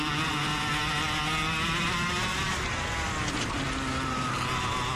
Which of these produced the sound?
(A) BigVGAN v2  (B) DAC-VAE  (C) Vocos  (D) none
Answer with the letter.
D